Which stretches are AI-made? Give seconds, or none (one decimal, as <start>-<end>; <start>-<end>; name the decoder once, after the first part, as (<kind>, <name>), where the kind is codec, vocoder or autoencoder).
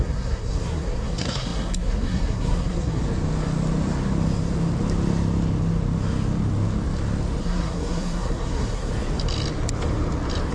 0.0-3.0 (codec, SNAC); 7.4-8.9